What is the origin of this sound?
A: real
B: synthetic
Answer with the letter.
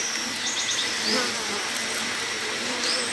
A